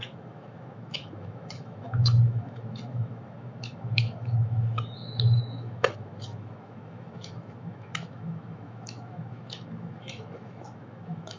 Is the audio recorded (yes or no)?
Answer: no